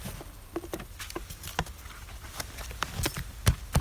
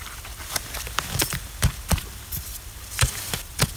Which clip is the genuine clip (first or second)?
first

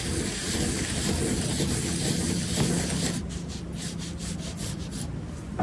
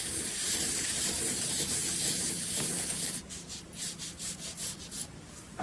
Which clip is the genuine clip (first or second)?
first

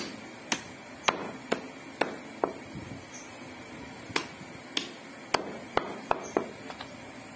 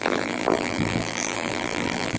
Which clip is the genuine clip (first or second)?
first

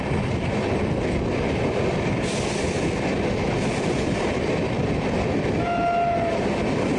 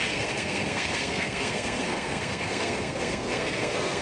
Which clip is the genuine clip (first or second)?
first